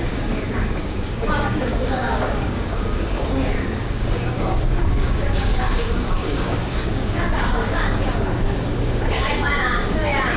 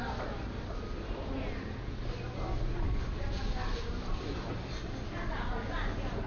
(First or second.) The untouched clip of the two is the second